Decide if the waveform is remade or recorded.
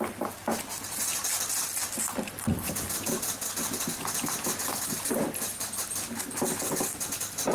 recorded